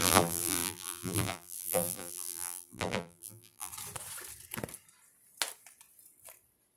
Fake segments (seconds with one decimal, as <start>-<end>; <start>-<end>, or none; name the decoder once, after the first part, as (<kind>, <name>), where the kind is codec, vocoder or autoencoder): 0.0-3.7 (vocoder, BigVGAN v2)